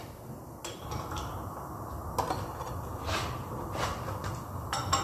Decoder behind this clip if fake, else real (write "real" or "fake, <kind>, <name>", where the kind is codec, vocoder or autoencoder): real